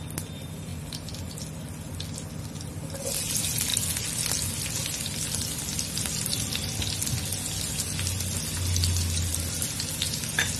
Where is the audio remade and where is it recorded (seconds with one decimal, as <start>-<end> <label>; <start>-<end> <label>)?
0.0-10.6 recorded